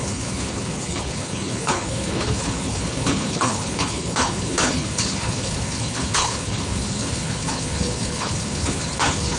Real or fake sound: fake